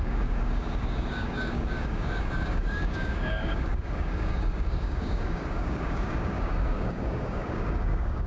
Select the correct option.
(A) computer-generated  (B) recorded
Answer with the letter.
A